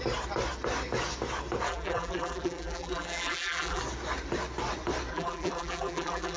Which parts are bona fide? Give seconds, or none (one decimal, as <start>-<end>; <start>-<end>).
0.0-1.7; 3.8-5.1